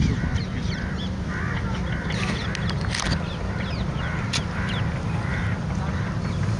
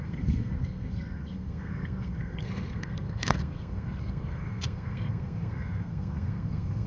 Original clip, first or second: first